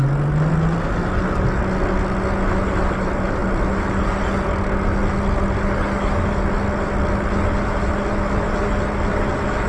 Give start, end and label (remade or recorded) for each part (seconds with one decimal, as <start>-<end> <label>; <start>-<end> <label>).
0.0-9.7 recorded